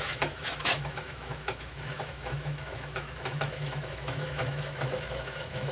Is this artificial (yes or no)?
yes